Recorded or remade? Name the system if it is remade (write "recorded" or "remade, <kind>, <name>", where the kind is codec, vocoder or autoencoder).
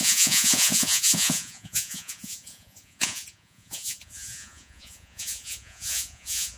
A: remade, vocoder, Vocos